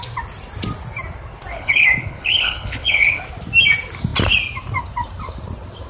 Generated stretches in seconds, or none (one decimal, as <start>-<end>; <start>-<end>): 1.5-3.2